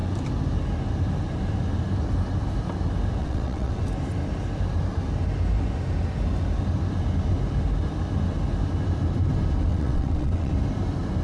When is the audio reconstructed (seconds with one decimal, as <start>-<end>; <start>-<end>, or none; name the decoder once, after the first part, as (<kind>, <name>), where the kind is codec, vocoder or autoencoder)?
3.2-3.8 (vocoder, WaveNeXt); 9.7-10.5